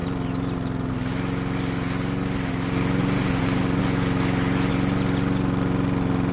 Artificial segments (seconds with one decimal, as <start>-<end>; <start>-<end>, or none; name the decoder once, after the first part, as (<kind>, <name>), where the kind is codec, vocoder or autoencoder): 3.0-3.6 (vocoder, BigVGAN v2)